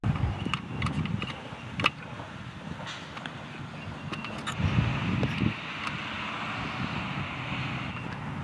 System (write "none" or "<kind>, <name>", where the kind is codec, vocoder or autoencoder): none